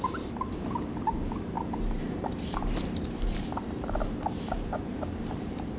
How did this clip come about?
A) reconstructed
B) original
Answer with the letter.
A